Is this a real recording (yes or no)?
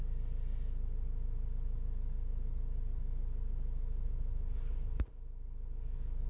yes